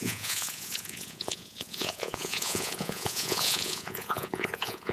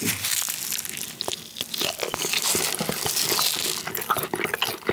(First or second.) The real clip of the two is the second